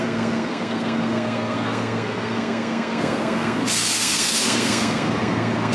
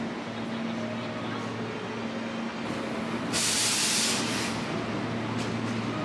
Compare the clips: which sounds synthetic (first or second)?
first